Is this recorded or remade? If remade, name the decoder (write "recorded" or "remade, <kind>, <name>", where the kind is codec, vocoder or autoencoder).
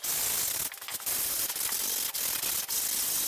recorded